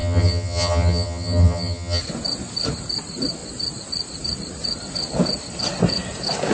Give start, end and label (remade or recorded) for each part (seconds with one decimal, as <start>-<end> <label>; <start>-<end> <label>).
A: 0.0-2.0 remade; 2.0-6.5 recorded